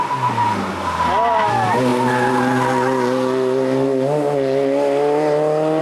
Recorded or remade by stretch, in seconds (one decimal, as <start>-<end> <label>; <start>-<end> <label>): 0.0-5.8 recorded